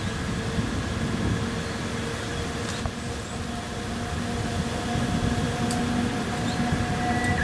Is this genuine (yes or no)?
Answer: yes